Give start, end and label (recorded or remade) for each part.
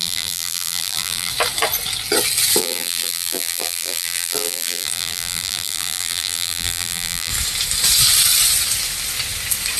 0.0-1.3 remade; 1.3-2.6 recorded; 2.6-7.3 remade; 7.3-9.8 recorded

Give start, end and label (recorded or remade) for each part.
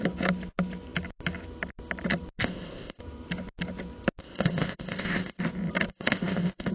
0.0-2.4 recorded; 2.4-3.0 remade; 3.0-4.2 recorded; 4.2-5.4 remade; 5.4-5.9 recorded; 5.9-6.7 remade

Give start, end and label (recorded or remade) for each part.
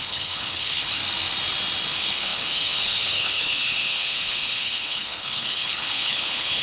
0.0-1.0 remade; 1.0-1.9 recorded; 1.9-6.6 remade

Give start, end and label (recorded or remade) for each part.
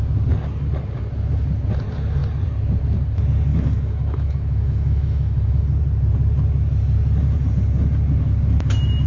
0.0-3.5 recorded; 3.5-5.6 remade; 5.6-9.1 recorded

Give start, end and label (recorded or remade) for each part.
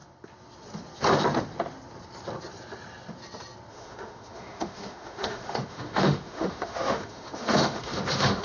0.0-3.7 recorded; 3.7-8.4 remade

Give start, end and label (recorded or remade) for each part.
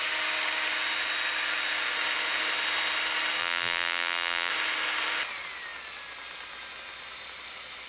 0.0-3.4 recorded; 3.4-4.5 remade; 4.5-7.9 recorded